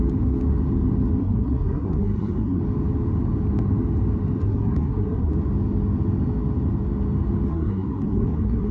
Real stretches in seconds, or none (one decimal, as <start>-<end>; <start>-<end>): 0.0-1.2; 2.6-4.4; 5.3-7.5